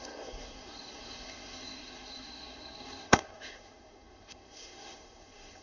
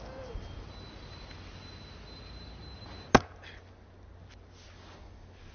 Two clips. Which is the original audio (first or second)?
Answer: second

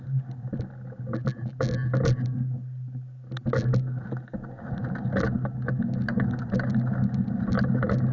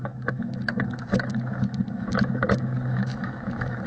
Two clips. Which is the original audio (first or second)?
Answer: first